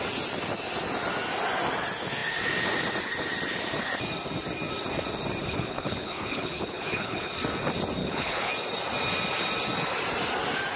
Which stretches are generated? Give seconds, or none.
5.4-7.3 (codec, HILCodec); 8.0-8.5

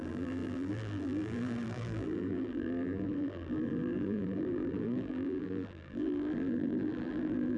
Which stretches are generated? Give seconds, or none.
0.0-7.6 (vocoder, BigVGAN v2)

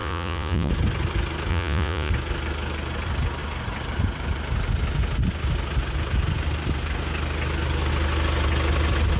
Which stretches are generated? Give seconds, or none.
0.0-0.7 (vocoder, Vocos); 1.5-2.1

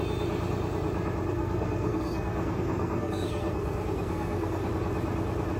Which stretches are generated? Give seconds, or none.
1.3-4.7 (codec, SNAC)